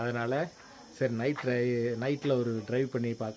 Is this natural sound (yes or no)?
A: yes